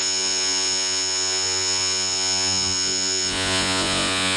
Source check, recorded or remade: remade